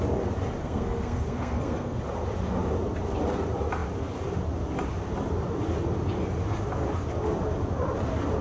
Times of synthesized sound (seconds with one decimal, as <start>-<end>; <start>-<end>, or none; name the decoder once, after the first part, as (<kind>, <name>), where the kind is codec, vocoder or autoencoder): 0.6-2.0 (codec, SNAC)